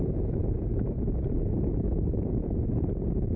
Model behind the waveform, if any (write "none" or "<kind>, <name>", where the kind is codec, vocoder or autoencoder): vocoder, BigVGAN v2